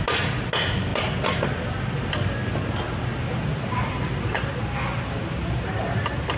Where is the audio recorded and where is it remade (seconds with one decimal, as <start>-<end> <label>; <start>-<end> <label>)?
0.0-3.5 recorded; 3.5-4.5 remade; 4.5-5.2 recorded; 5.2-6.4 remade